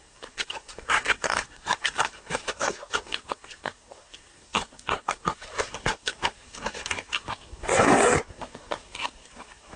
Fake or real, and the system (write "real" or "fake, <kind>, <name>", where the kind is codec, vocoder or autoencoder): fake, codec, SNAC